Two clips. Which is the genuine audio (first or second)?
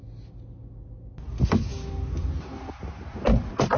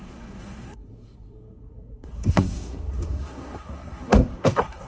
first